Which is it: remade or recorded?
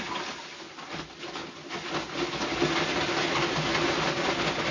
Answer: recorded